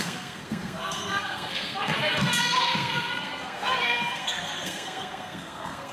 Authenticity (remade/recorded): remade